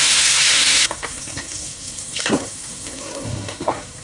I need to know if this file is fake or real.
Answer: fake